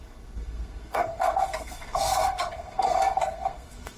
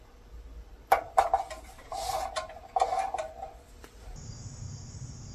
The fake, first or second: first